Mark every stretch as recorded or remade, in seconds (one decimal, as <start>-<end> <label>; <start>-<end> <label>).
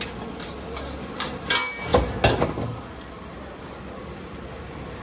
0.0-5.0 recorded